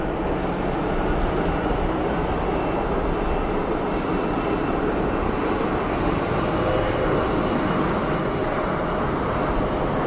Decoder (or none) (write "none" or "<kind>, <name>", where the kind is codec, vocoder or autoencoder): none